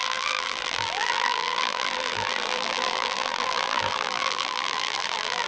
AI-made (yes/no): yes